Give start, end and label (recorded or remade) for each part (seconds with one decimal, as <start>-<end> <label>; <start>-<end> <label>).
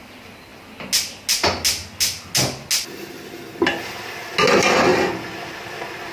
0.0-6.1 recorded